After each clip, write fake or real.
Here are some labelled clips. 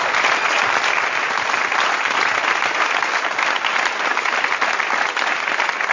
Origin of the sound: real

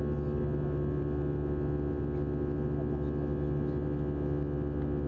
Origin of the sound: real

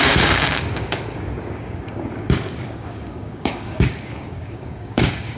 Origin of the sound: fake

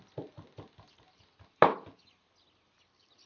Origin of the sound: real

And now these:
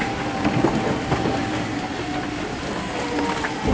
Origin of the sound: real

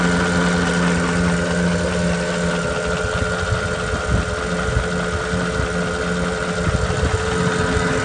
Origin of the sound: real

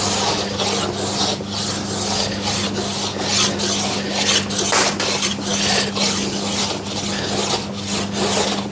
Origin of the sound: real